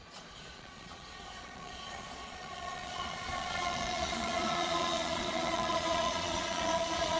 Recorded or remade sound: remade